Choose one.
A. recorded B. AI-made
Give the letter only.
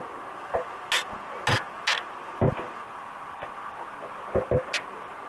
A